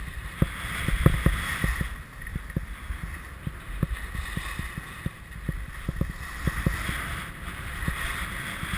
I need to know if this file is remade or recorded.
recorded